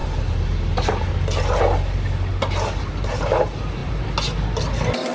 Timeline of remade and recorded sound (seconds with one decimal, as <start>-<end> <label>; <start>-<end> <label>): 0.0-5.1 recorded